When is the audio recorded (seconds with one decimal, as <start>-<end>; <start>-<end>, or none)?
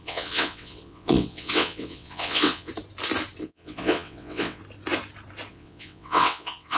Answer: 2.7-3.4; 4.6-5.5